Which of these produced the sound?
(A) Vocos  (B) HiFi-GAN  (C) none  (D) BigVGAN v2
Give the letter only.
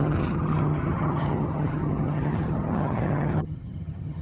B